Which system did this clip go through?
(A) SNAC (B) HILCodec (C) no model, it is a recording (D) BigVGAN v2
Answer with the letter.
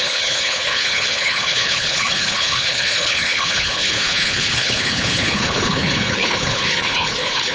B